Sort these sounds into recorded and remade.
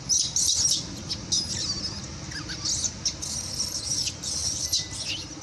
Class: recorded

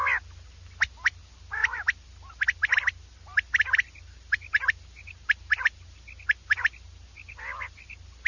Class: recorded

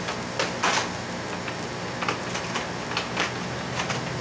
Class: recorded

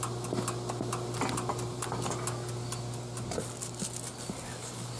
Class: recorded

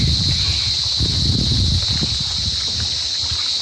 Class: recorded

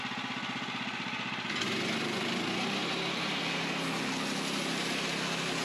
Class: recorded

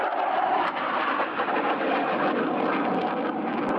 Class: recorded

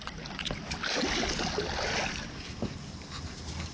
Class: recorded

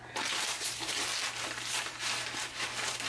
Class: recorded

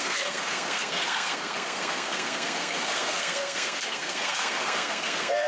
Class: remade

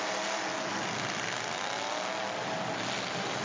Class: recorded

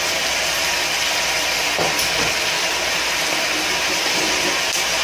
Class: recorded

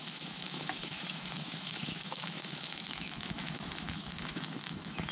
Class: remade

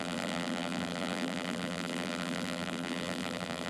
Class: remade